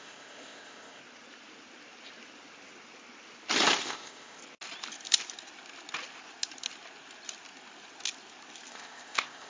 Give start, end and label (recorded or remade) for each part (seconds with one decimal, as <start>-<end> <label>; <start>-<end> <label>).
0.0-1.0 remade; 1.0-3.8 recorded; 3.8-4.4 remade; 4.4-8.7 recorded; 8.7-9.5 remade